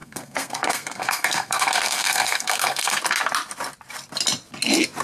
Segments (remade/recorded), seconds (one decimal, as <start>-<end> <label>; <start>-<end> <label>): 0.0-3.0 remade; 3.0-5.0 recorded